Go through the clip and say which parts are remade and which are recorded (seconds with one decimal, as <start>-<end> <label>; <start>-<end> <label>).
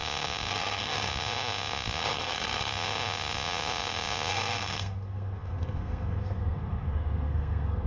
0.0-0.5 recorded; 0.5-1.1 remade; 1.1-2.0 recorded; 2.0-2.7 remade; 2.7-4.3 recorded; 4.3-7.9 remade